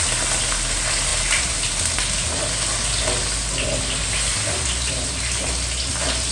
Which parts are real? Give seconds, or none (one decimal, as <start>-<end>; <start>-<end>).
0.0-6.3